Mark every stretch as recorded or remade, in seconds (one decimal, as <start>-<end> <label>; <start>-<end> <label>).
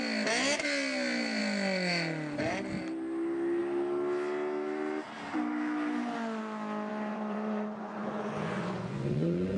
0.0-6.9 recorded; 6.9-9.6 remade